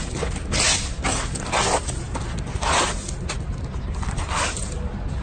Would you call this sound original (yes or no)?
yes